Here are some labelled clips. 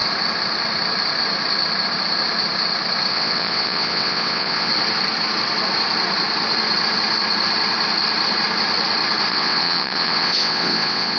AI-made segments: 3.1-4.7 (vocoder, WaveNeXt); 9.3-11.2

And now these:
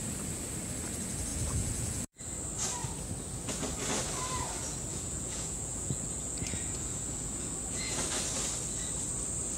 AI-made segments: 1.3-2.2 (vocoder, Vocos); 4.9-8.0